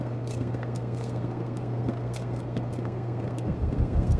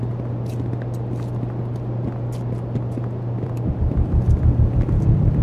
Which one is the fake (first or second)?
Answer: first